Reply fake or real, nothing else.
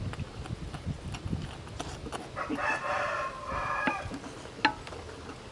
real